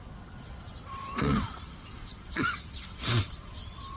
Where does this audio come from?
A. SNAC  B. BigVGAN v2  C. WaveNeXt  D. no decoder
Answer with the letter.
C